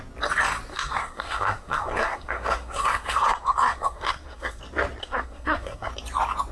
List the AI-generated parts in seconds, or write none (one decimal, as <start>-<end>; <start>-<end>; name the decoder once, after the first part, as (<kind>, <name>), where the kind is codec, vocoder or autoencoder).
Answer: 0.7-4.6 (codec, SNAC); 5.0-5.9